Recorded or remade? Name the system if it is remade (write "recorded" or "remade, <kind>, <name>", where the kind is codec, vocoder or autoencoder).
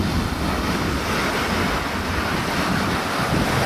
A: recorded